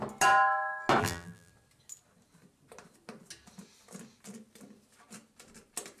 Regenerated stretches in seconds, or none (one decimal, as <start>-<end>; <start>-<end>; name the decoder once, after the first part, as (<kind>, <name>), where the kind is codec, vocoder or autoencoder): 1.0-1.5 (vocoder, BigVGAN v2)